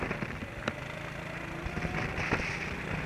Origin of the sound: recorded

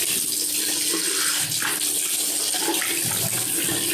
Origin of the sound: recorded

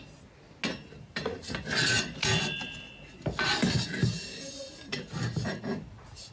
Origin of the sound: recorded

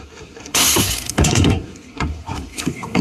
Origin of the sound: remade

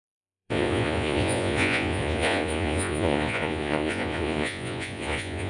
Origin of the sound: remade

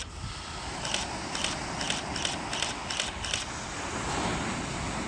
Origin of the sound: recorded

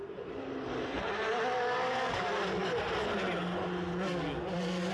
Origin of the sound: recorded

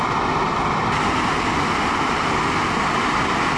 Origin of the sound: recorded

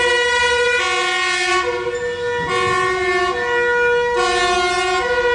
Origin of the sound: recorded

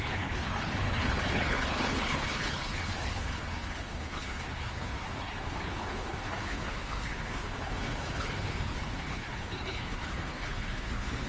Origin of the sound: remade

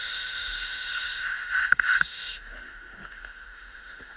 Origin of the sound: remade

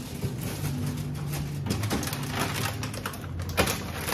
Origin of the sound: recorded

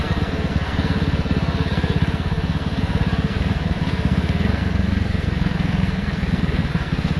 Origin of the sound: remade